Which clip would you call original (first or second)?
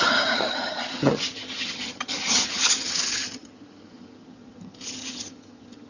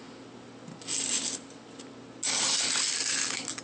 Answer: second